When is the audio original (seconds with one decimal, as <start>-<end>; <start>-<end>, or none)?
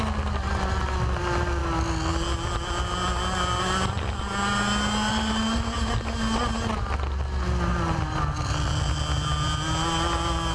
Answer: 0.0-5.1; 5.9-7.7; 8.2-10.5